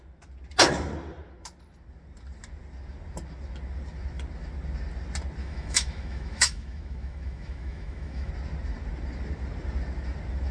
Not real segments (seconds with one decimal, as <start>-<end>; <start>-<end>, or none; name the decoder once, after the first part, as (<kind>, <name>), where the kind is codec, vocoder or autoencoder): 5.4-8.3 (autoencoder, DAC-VAE)